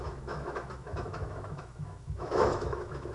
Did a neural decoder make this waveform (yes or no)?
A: yes